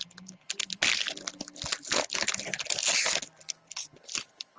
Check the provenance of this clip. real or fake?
real